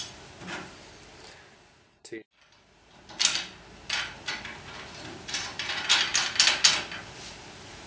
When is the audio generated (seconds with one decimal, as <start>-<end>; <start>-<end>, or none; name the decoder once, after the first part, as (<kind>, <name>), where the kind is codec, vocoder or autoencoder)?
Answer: none